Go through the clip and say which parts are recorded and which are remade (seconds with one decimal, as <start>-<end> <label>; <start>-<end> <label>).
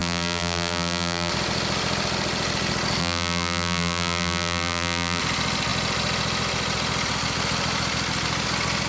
0.0-1.3 remade; 1.3-3.0 recorded; 3.0-5.2 remade; 5.2-8.9 recorded